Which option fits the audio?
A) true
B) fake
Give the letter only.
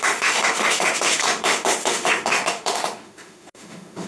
B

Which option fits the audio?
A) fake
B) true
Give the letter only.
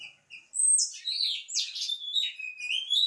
B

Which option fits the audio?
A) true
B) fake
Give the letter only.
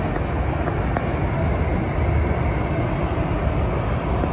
A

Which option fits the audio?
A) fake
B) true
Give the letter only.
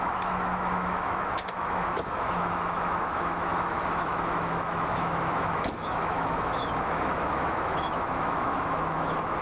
A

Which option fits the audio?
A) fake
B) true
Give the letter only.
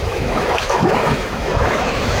A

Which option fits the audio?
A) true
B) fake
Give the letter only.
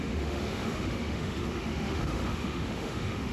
B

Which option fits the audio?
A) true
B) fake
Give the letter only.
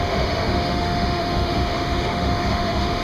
B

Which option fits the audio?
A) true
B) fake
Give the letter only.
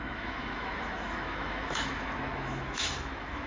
B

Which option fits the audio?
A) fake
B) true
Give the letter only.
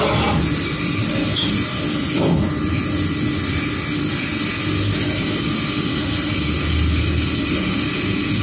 B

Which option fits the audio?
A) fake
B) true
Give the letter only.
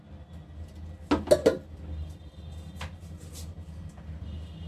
B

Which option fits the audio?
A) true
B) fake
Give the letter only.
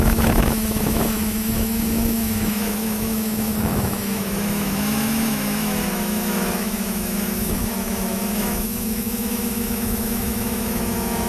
B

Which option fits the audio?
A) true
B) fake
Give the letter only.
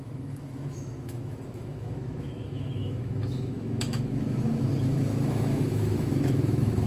B